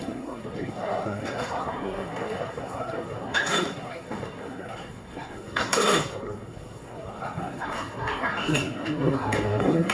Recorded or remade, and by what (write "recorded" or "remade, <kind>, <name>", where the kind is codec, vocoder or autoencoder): remade, codec, SNAC